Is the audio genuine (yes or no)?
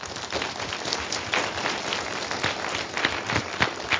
yes